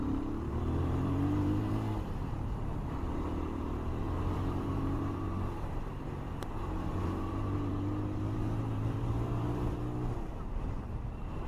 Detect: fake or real fake